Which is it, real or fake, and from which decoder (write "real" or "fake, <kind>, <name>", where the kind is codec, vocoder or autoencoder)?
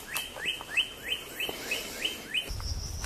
real